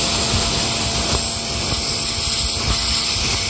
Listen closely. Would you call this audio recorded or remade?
recorded